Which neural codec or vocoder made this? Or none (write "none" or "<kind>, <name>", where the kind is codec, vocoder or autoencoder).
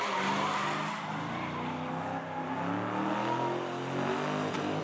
none